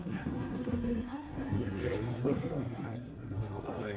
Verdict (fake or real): fake